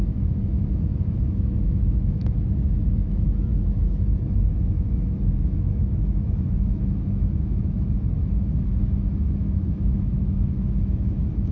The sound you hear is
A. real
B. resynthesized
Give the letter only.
B